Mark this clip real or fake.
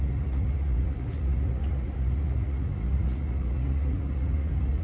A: fake